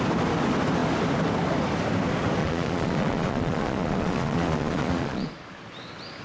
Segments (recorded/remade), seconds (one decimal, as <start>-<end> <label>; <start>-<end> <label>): 0.0-2.4 recorded; 2.4-5.3 remade; 5.3-6.2 recorded